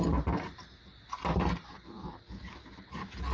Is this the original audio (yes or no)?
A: yes